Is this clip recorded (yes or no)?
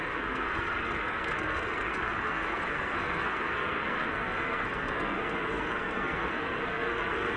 no